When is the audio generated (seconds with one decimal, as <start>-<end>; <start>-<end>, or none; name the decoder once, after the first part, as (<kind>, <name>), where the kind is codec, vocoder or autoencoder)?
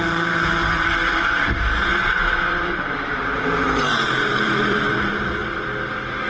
0.0-5.4 (vocoder, BigVGAN v2)